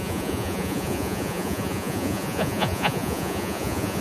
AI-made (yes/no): yes